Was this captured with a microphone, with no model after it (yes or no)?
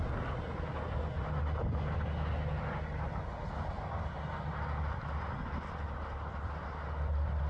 yes